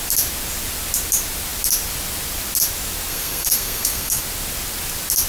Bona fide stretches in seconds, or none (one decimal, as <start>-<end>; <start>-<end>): 0.0-3.1; 4.2-5.3